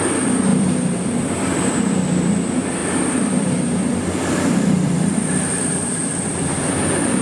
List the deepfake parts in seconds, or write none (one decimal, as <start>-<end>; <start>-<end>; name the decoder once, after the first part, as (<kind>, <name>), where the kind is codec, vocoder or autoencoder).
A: 0.5-1.8 (vocoder, BigVGAN v2); 2.8-6.3